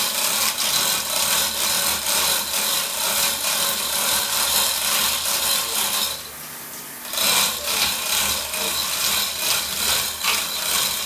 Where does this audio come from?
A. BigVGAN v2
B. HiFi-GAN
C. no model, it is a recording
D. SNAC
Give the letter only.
C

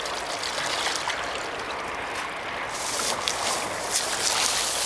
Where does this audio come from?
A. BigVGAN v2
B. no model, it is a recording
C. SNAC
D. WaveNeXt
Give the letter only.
B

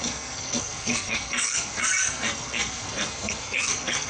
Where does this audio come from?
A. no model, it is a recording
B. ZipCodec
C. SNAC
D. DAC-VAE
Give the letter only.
C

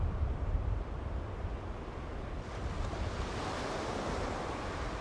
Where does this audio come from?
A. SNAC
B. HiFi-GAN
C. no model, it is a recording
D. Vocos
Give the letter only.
C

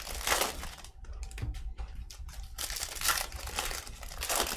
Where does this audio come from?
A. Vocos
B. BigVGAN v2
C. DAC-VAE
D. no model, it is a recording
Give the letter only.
D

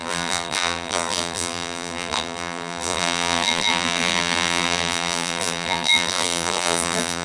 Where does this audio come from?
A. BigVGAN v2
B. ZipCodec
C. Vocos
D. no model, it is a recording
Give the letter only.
A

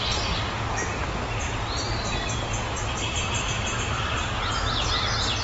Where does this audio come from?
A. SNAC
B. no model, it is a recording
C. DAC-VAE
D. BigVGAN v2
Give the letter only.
B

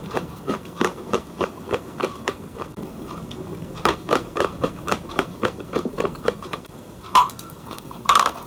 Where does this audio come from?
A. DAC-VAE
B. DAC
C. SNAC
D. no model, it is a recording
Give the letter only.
C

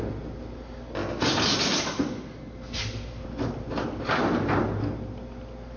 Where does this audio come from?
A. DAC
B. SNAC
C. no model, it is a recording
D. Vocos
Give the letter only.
C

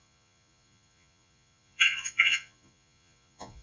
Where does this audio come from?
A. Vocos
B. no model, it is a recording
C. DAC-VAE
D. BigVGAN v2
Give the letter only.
A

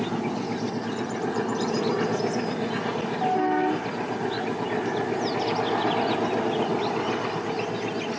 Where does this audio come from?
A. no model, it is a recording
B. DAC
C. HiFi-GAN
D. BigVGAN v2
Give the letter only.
A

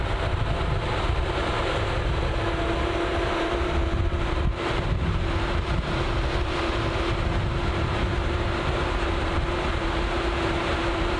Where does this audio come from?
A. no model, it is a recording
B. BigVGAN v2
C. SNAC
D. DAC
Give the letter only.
B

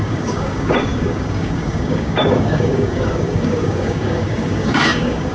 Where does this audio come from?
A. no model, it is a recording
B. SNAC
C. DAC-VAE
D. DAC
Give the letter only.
D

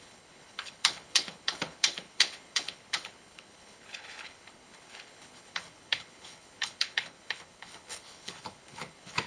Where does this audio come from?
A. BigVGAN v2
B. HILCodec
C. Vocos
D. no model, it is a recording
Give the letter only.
B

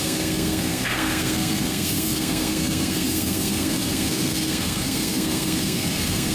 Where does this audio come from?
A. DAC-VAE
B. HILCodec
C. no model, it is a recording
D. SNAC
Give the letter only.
D